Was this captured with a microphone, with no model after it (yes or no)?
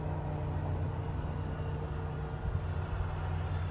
yes